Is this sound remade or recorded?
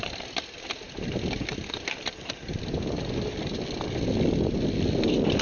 recorded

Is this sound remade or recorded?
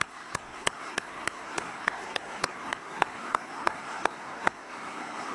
remade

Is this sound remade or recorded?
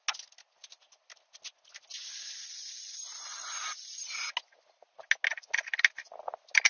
recorded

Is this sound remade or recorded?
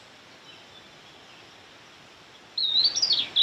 recorded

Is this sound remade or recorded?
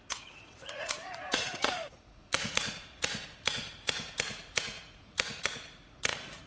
remade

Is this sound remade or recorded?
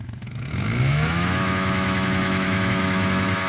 remade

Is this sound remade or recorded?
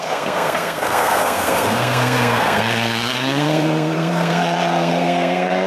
remade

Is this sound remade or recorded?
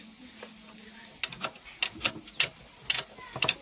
recorded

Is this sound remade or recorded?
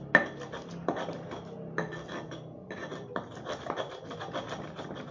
recorded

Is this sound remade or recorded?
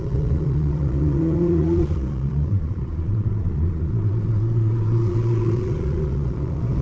remade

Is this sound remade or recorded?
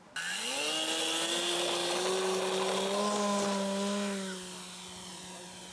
recorded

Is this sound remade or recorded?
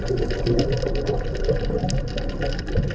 recorded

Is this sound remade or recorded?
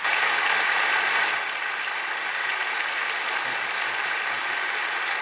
recorded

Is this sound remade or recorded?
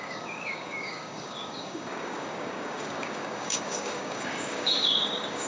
remade